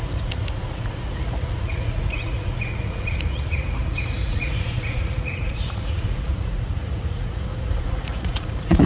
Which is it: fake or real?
fake